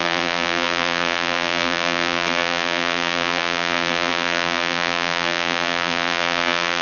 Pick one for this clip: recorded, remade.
remade